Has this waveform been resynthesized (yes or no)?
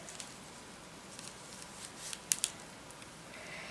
no